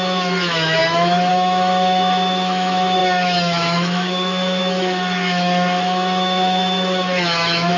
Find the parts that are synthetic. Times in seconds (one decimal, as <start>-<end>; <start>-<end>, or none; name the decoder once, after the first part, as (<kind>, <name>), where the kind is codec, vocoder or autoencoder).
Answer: 0.0-7.8 (autoencoder, DAC-VAE)